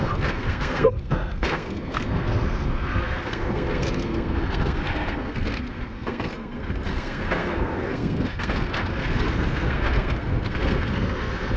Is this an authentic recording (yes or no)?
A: no